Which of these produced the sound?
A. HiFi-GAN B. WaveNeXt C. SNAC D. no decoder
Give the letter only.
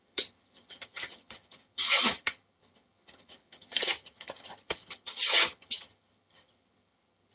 A